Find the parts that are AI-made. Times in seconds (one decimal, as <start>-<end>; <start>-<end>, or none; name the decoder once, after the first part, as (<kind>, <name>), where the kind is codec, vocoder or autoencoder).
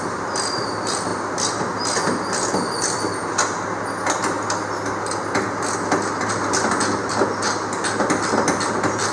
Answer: 0.0-1.1 (vocoder, BigVGAN v2); 6.3-9.1